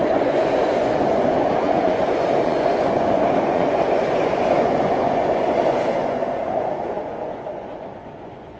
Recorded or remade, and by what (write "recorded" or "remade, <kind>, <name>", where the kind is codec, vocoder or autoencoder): remade, vocoder, Vocos